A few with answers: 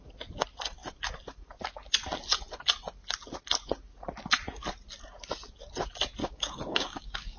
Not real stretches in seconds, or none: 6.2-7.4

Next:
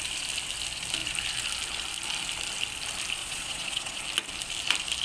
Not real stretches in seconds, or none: 3.2-4.0

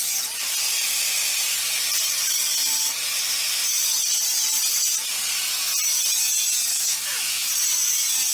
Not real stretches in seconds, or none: 6.7-7.5

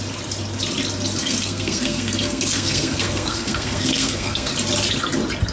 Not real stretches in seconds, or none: 1.2-4.5